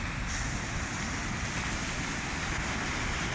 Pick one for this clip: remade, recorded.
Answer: recorded